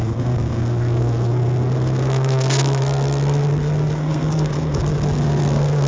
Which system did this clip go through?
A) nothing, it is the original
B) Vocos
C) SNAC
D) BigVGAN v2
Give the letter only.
C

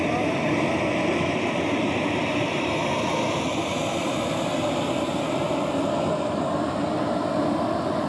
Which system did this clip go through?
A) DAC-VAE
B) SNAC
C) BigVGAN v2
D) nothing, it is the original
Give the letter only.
D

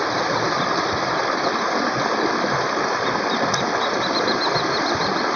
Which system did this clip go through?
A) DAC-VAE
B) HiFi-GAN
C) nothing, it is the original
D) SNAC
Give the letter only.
C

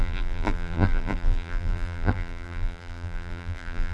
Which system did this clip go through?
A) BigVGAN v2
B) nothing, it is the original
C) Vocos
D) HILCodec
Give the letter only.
A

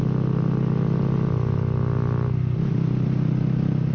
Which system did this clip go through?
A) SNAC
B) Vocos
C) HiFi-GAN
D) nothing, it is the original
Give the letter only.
D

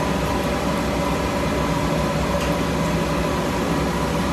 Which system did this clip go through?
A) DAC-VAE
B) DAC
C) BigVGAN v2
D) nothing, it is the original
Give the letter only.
D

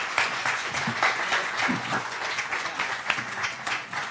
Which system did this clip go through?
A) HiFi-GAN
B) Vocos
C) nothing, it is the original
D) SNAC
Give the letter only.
B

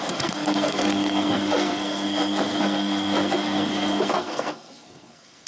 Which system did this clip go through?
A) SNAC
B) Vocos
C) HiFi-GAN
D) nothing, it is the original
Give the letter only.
A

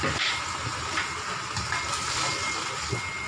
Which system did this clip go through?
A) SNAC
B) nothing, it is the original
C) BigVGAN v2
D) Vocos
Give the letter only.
B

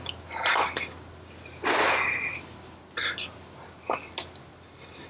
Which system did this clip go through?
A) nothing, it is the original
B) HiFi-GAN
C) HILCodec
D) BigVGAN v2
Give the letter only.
A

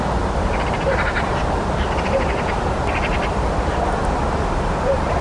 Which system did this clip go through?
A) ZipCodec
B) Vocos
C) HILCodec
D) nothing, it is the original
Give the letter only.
D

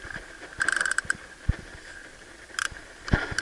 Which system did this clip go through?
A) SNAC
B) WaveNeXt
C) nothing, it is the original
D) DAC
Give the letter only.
C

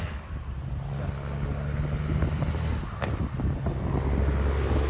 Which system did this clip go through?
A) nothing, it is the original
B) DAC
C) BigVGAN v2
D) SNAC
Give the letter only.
A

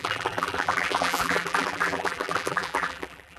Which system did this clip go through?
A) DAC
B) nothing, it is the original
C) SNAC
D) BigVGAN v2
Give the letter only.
D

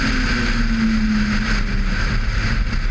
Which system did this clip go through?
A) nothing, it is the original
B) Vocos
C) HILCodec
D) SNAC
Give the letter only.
A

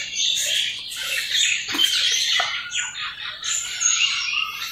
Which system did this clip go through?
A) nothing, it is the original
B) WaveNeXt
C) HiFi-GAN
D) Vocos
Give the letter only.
A